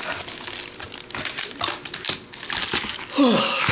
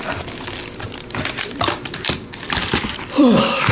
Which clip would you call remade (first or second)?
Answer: second